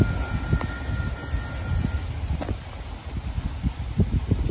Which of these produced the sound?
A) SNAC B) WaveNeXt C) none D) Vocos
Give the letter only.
C